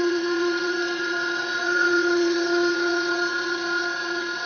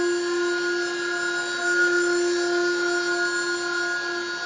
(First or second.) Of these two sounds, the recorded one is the second